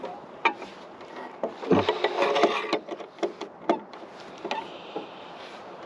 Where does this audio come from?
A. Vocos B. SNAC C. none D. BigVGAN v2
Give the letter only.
C